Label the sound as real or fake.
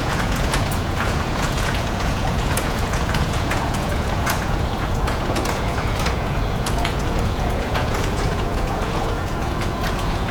fake